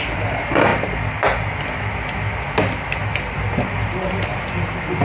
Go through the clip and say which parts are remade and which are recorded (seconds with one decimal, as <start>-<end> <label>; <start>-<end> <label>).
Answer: 0.0-0.7 remade; 0.7-3.7 recorded; 3.7-5.0 remade